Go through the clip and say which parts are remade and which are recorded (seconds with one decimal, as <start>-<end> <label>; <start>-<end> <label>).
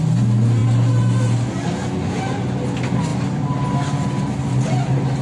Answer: 0.0-5.2 recorded